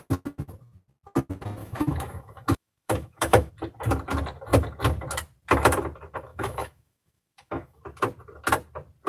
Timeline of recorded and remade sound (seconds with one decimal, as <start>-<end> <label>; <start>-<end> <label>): 0.0-1.6 recorded; 1.6-3.5 remade; 3.5-6.3 recorded; 6.3-7.8 remade; 7.8-9.1 recorded